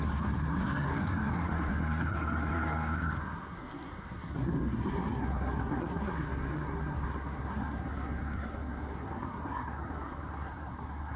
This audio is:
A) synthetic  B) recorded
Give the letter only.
A